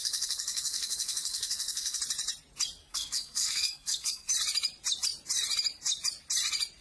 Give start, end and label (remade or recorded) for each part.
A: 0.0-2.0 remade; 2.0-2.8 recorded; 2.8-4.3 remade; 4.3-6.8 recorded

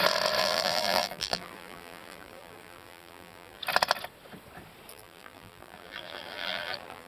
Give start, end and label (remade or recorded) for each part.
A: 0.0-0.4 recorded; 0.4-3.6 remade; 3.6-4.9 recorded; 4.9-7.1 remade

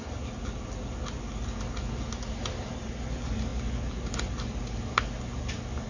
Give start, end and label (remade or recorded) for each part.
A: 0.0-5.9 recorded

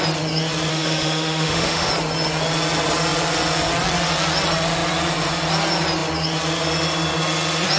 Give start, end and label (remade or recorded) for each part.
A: 0.0-0.7 recorded; 0.7-1.9 remade; 1.9-7.8 recorded

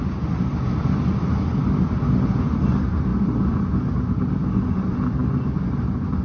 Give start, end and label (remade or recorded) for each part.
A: 0.0-6.2 recorded